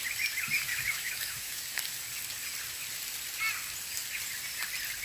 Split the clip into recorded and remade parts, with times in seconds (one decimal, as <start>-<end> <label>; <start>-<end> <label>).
0.0-0.7 recorded; 0.7-1.6 remade; 1.6-5.0 recorded